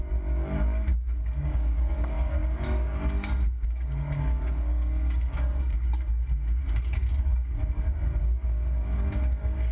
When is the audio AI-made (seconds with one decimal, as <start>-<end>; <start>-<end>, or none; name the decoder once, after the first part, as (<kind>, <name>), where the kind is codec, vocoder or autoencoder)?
0.0-7.6 (codec, DAC); 8.2-9.7